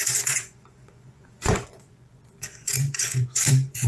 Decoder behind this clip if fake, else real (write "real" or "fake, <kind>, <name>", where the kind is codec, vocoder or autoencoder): fake, vocoder, Vocos